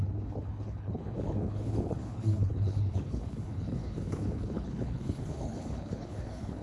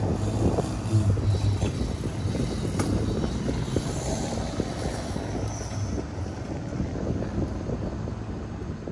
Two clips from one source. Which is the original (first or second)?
second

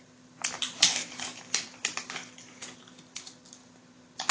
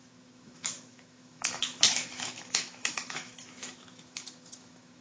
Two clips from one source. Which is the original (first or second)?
first